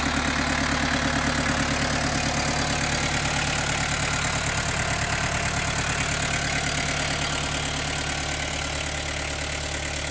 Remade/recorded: recorded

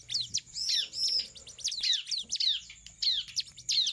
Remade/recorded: recorded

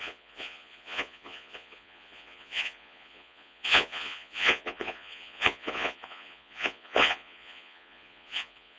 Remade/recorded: remade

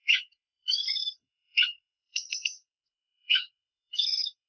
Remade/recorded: remade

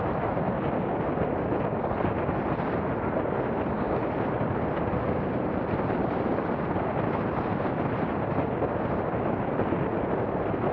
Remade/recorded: recorded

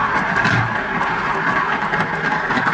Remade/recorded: recorded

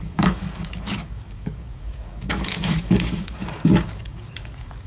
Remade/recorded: remade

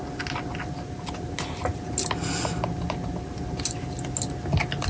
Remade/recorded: recorded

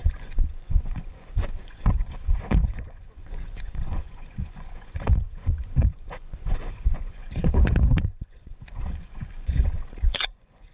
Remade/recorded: remade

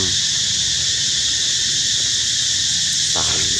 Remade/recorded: recorded